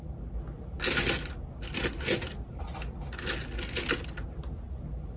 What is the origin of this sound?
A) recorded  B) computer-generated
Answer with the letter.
A